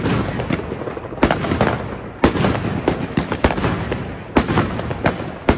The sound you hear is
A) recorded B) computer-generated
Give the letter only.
A